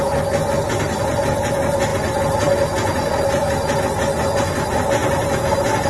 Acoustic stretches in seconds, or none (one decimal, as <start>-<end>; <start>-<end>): 0.0-5.9